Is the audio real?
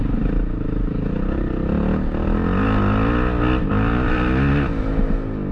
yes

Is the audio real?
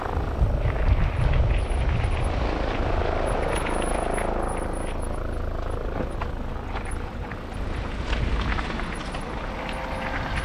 yes